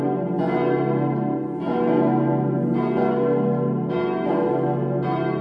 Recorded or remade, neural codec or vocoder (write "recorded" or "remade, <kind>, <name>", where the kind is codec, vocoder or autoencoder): recorded